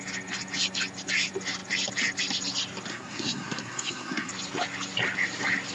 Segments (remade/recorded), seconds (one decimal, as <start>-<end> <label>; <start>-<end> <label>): 0.0-2.9 recorded; 2.9-4.3 remade; 4.3-5.7 recorded